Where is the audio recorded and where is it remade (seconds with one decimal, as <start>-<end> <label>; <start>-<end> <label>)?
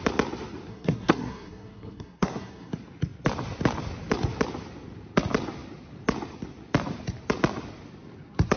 0.0-0.7 recorded; 0.7-2.7 remade; 2.7-8.6 recorded